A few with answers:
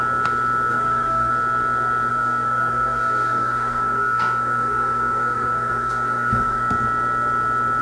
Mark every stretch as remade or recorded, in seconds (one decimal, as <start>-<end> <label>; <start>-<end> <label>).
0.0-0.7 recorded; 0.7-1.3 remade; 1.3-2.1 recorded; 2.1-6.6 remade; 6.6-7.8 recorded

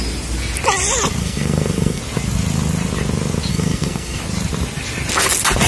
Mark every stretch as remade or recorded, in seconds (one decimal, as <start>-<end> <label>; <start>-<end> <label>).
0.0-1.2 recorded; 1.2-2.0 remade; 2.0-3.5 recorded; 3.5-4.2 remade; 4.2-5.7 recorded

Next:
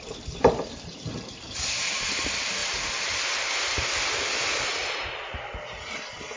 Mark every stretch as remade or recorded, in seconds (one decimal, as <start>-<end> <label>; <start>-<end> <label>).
0.0-6.4 recorded

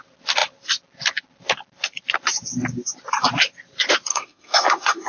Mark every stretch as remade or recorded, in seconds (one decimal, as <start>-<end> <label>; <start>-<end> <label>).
0.0-4.1 recorded; 4.1-5.1 remade

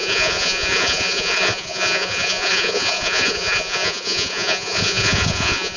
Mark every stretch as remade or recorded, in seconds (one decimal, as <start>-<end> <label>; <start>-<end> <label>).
0.0-5.8 remade